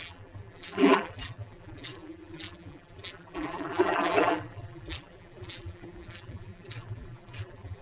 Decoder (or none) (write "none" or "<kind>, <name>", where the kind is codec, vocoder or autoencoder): vocoder, BigVGAN v2